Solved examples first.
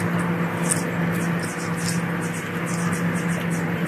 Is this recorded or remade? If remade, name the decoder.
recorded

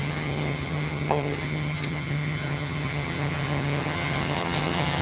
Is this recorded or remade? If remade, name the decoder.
remade, vocoder, HiFi-GAN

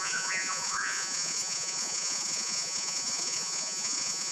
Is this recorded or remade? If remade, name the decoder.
remade, vocoder, Vocos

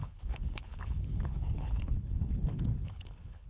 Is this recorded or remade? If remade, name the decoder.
remade, codec, HILCodec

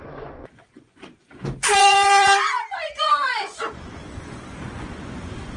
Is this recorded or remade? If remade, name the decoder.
remade, vocoder, Vocos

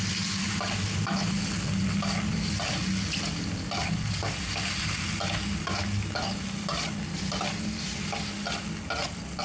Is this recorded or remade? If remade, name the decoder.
recorded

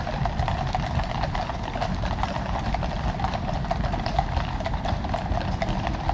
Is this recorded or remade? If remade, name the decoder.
recorded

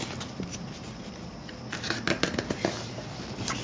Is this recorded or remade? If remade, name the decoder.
recorded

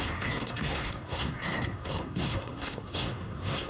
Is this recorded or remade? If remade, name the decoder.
remade, codec, SNAC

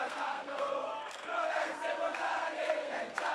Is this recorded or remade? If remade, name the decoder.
remade, codec, SNAC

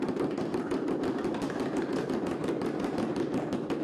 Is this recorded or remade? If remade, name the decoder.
remade, vocoder, BigVGAN v2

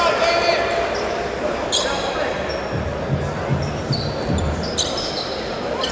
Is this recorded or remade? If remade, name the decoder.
remade, vocoder, BigVGAN v2